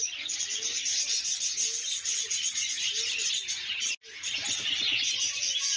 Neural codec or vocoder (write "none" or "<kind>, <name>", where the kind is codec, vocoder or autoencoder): none